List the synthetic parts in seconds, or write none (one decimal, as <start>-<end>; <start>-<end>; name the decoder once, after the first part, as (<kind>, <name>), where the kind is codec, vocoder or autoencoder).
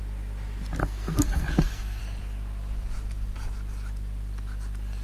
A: 0.8-2.0 (codec, SNAC)